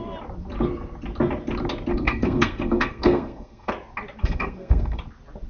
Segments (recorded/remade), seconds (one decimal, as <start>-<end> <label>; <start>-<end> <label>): 0.0-1.9 recorded; 1.9-3.7 remade; 3.7-4.2 recorded; 4.2-5.0 remade; 5.0-5.5 recorded